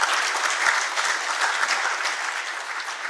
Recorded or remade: recorded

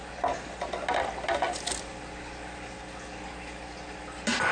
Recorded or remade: recorded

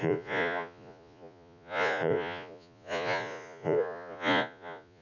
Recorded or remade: remade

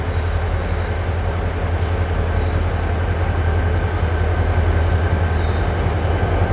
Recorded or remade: recorded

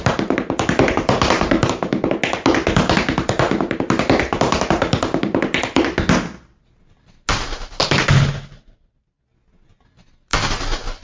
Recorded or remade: recorded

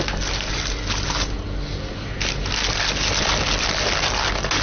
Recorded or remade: recorded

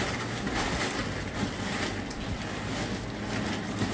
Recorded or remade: recorded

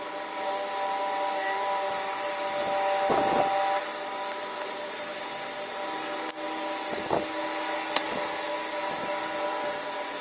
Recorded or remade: recorded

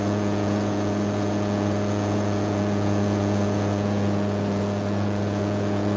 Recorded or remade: remade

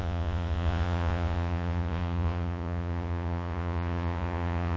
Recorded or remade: remade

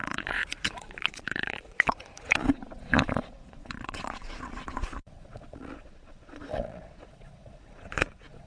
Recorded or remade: remade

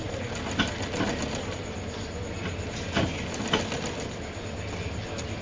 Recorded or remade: recorded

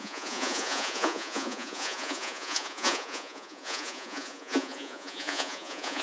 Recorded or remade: remade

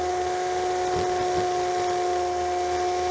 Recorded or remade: recorded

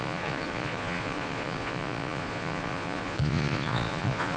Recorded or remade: remade